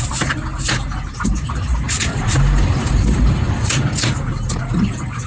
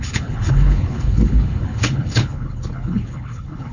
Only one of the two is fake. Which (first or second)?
second